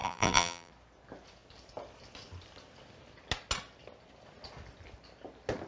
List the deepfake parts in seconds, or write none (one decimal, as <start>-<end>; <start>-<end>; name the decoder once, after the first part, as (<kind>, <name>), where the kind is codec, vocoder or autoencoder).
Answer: 0.0-0.7 (vocoder, BigVGAN v2)